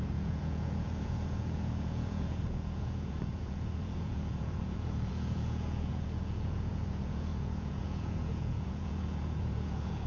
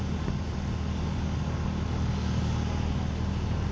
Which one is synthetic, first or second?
first